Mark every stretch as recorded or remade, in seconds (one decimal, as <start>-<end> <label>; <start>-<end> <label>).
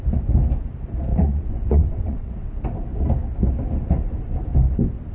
0.0-1.1 recorded; 1.1-2.5 remade; 2.5-5.1 recorded